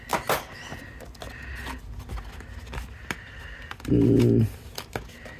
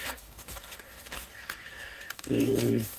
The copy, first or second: second